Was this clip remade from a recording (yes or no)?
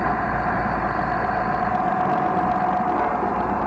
no